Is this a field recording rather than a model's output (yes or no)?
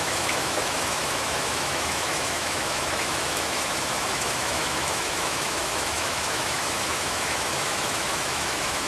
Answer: no